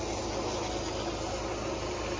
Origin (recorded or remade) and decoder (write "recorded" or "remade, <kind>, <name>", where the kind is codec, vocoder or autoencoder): recorded